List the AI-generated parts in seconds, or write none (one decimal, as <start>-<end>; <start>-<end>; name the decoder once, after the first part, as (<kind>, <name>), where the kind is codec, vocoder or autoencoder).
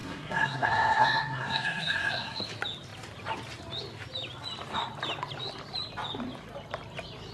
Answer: 0.0-2.4 (codec, SNAC)